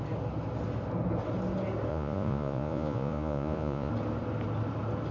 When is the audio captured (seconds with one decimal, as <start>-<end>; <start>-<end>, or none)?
0.0-1.9; 3.9-5.1

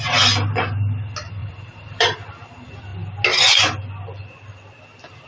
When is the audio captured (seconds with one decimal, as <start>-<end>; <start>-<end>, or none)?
0.0-1.4; 2.3-5.3